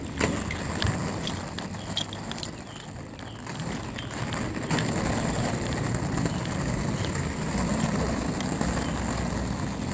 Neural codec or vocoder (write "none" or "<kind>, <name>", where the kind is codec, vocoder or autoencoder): none